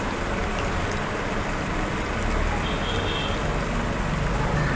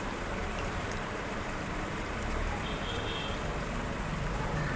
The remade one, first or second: second